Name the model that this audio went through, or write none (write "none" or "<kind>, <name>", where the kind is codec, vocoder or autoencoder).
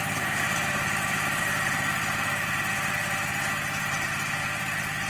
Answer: vocoder, BigVGAN v2